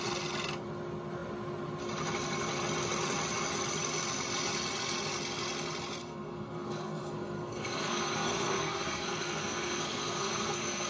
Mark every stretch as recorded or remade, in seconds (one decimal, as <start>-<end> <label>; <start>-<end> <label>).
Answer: 0.0-6.0 recorded; 6.0-10.9 remade